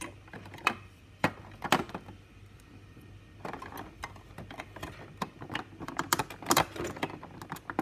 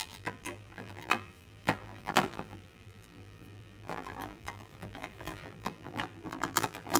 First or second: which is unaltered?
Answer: first